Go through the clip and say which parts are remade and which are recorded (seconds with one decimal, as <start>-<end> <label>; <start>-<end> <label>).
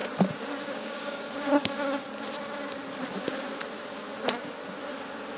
0.0-0.6 recorded; 0.6-2.1 remade; 2.1-5.4 recorded